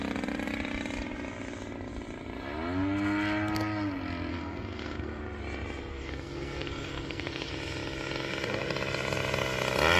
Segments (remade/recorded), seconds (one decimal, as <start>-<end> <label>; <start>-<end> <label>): 0.0-4.3 recorded; 4.3-5.2 remade; 5.2-5.9 recorded; 5.9-7.5 remade; 7.5-10.0 recorded